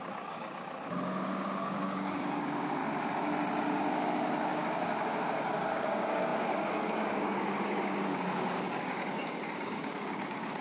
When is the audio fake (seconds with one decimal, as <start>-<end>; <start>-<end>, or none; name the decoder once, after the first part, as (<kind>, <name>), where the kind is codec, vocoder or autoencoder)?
0.0-2.8 (codec, DAC); 3.6-10.6